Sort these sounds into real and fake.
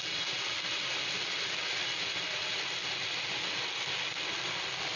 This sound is real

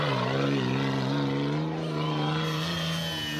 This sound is real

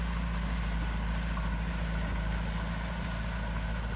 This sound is real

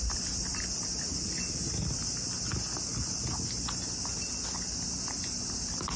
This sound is real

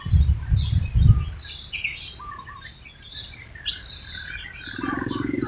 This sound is real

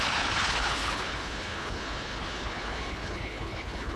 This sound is fake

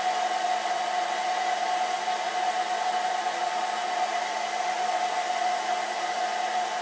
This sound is real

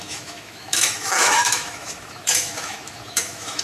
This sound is fake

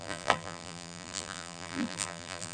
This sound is fake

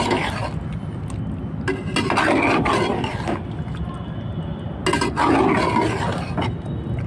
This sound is real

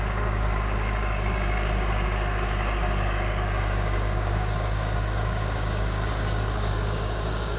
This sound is fake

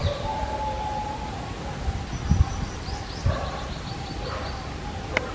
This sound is fake